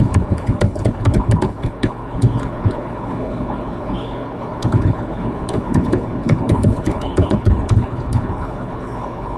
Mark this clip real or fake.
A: fake